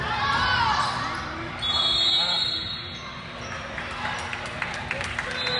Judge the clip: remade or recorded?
recorded